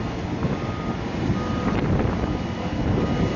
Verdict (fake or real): real